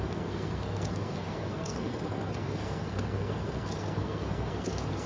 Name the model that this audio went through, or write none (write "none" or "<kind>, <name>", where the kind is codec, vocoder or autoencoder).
codec, SNAC